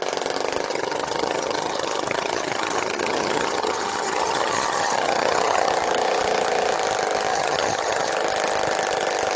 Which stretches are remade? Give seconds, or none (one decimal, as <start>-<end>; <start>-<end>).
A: 0.7-5.7; 7.3-8.1